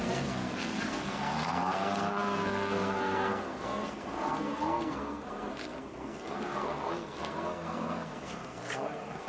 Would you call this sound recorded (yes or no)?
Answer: no